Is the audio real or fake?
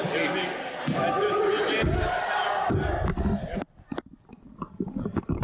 real